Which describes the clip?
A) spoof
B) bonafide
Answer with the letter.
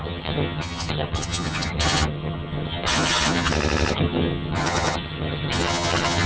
A